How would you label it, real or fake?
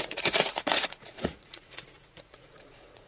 fake